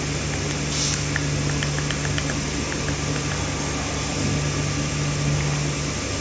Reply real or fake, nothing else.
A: real